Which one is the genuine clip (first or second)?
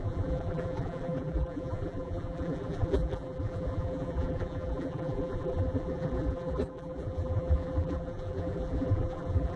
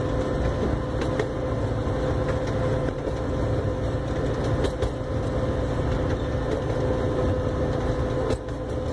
second